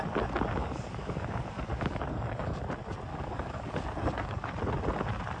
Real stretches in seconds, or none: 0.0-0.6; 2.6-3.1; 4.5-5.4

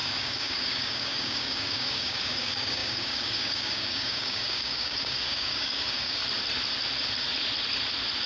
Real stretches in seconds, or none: 6.2-8.3

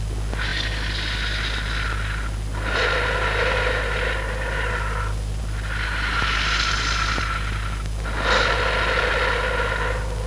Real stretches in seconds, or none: 0.0-10.3

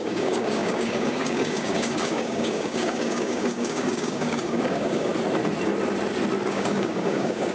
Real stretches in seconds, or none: 5.1-6.5

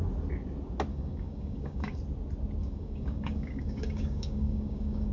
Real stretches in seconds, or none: 0.0-0.9; 2.0-2.6

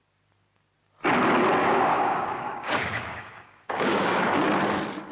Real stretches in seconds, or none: 0.0-1.6; 4.4-5.1

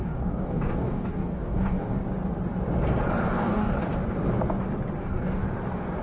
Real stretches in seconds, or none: 2.0-3.3; 3.9-5.0; 5.4-6.0

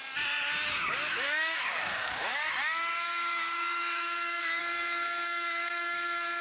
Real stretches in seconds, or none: 0.0-0.7